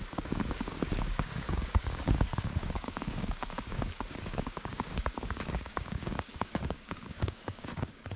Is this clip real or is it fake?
fake